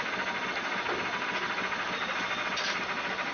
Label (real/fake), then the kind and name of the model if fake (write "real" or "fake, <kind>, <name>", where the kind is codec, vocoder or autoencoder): real